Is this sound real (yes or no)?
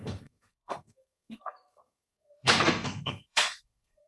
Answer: no